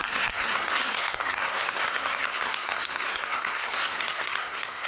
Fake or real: fake